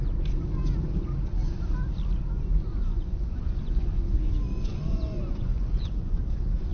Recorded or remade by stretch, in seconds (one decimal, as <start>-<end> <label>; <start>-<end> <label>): 0.0-2.7 recorded; 2.7-4.3 remade; 4.3-4.7 recorded; 4.7-6.2 remade; 6.2-6.7 recorded

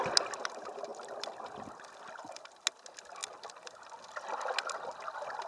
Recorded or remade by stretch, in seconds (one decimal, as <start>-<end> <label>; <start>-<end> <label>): 0.0-5.5 recorded

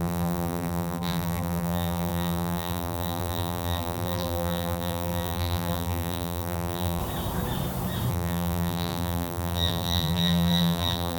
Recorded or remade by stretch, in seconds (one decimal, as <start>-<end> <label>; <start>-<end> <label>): 0.0-7.0 remade; 7.0-8.1 recorded; 8.1-11.2 remade

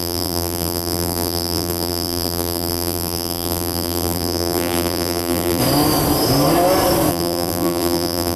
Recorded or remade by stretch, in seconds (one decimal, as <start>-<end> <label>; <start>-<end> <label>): 0.0-5.6 remade; 5.6-7.1 recorded; 7.1-8.4 remade

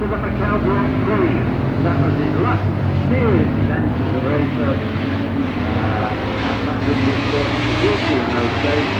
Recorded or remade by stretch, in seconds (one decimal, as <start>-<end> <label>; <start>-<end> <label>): 0.0-4.4 recorded; 4.4-5.4 remade; 5.4-6.2 recorded; 6.2-8.3 remade; 8.3-9.0 recorded